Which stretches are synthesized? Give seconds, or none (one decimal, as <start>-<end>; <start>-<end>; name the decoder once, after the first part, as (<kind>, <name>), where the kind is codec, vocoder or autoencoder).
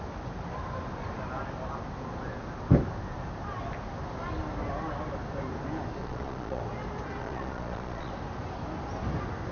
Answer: 6.0-6.6 (vocoder, Vocos); 7.2-8.1